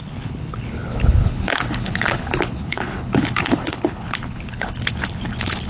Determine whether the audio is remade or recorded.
remade